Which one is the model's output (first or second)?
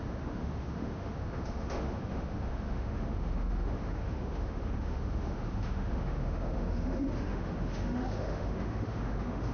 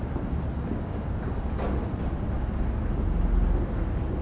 first